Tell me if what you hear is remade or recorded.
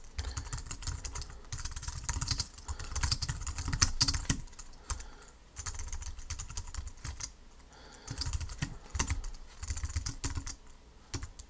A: recorded